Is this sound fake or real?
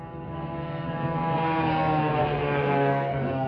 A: fake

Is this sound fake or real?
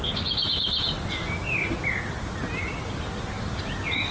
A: real